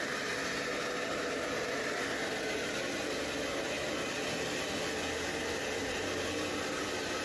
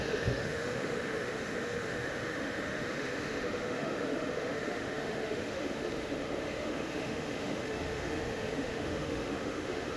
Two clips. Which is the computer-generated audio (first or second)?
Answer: second